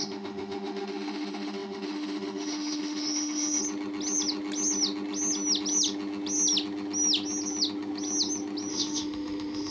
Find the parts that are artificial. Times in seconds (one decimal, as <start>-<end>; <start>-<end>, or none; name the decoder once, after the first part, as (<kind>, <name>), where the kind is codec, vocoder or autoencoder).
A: 0.0-3.6 (autoencoder, DAC-VAE); 8.7-9.7